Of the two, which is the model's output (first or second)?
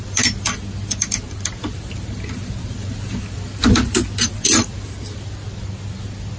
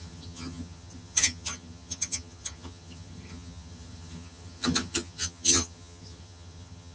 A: second